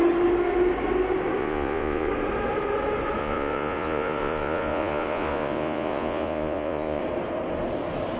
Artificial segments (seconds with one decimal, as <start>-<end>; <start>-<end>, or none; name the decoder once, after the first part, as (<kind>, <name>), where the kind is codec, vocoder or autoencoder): 1.4-2.1 (vocoder, Vocos); 3.2-7.0